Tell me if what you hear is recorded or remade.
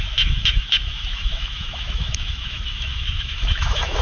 remade